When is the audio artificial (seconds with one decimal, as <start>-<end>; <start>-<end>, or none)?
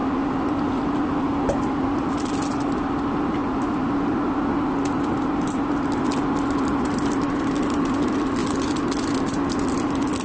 0.7-1.3; 2.0-3.4; 5.5-8.4; 9.5-10.2